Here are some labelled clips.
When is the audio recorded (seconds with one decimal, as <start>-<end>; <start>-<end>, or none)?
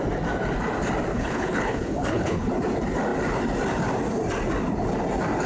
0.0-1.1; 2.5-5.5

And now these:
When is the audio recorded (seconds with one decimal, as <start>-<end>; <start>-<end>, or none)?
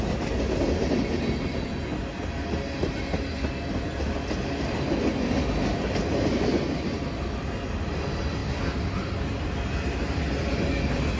0.0-11.2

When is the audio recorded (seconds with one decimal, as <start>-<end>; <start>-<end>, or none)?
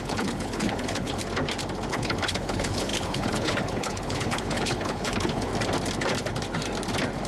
1.2-1.9; 5.5-7.3